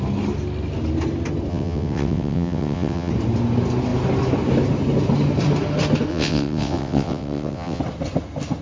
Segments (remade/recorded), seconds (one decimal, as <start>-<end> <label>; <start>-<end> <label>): 0.0-1.5 recorded; 1.5-3.1 remade; 3.1-6.1 recorded; 6.1-7.8 remade; 7.8-8.6 recorded